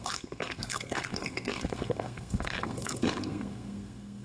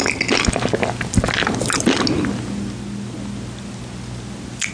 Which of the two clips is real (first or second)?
second